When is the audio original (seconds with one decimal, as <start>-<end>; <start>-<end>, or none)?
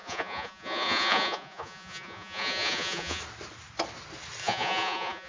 3.2-4.4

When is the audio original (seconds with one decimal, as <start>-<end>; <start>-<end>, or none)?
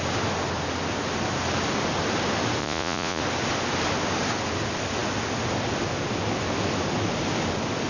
0.0-2.6; 3.2-7.9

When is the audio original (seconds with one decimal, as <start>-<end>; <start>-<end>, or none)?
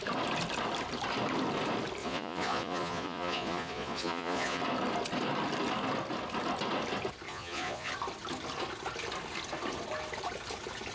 0.0-2.0; 4.6-7.3; 7.9-10.9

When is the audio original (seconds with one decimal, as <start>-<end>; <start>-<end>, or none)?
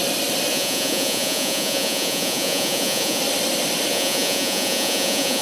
0.0-0.5; 3.2-3.9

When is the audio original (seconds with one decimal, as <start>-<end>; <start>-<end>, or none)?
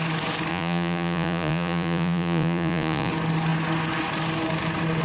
0.0-0.5; 3.1-5.0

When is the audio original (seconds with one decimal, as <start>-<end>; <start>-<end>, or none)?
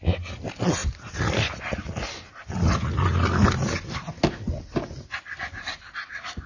0.0-6.5